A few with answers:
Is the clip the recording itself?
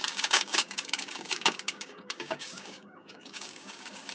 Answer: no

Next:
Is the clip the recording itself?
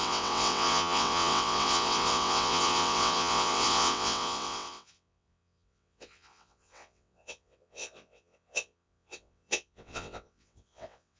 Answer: no